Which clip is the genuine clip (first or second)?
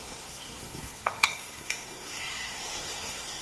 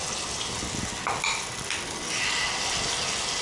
second